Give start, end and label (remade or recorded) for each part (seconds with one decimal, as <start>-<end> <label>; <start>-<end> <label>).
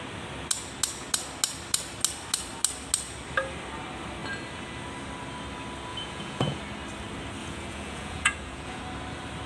0.0-5.9 recorded; 5.9-6.6 remade; 6.6-7.4 recorded; 7.4-8.8 remade; 8.8-9.5 recorded